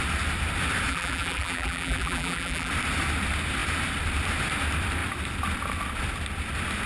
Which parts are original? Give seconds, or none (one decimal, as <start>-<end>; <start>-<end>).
0.0-0.9; 2.7-6.9